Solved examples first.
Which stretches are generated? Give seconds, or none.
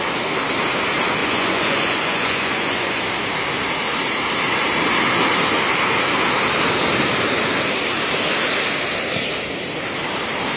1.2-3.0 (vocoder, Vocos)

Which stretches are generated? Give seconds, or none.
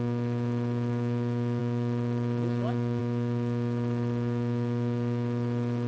none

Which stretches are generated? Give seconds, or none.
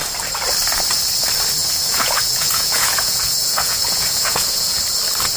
1.6-4.8 (vocoder, Vocos)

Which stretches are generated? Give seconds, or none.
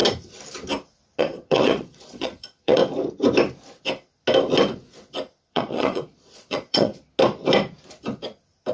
1.2-2.8 (vocoder, Vocos); 5.5-6.9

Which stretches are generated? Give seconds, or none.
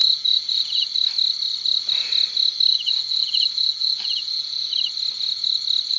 0.0-0.8 (vocoder, Vocos); 2.7-4.7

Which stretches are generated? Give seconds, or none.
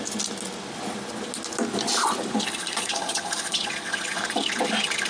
2.6-4.2 (vocoder, Vocos)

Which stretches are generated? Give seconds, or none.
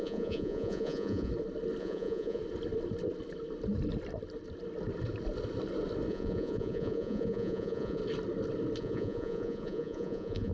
0.0-1.3 (vocoder, Vocos); 1.8-2.4; 6.1-8.0; 8.8-10.5